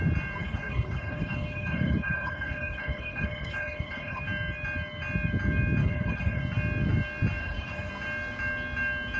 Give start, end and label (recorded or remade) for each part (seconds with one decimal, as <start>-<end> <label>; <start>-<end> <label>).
0.0-0.4 recorded; 0.4-4.2 remade; 4.2-5.8 recorded; 5.8-6.4 remade; 6.4-7.4 recorded; 7.4-7.9 remade; 7.9-9.2 recorded